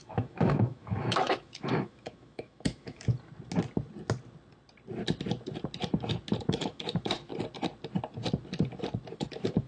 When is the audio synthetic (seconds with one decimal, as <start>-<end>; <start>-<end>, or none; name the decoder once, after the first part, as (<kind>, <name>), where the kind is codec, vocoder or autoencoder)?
0.0-3.1 (autoencoder, DAC-VAE); 6.5-7.3; 9.1-9.7